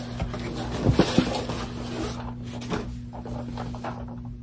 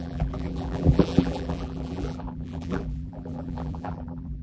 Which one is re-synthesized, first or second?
second